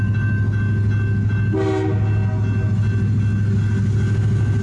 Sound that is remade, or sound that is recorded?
recorded